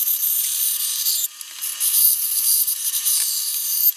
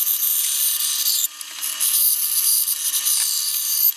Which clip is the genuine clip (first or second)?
second